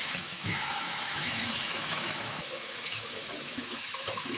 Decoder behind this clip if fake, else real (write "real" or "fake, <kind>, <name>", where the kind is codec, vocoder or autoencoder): fake, autoencoder, DAC-VAE